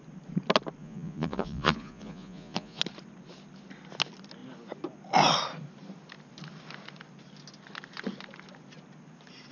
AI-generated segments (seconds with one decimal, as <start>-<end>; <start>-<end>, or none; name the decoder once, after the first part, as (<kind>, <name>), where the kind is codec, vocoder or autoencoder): 0.8-2.8 (vocoder, Vocos)